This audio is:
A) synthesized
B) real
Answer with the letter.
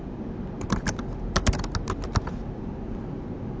B